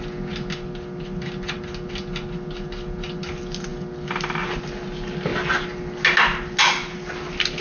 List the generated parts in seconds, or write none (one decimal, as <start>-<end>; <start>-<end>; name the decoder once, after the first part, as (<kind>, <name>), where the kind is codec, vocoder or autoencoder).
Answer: none